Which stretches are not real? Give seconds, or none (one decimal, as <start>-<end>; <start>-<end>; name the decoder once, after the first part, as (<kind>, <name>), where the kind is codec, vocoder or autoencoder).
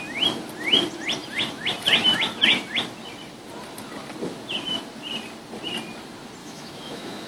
6.4-7.3 (autoencoder, DAC-VAE)